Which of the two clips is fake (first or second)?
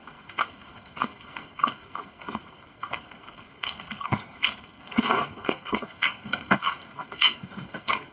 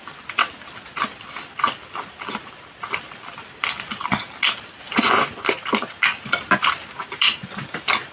first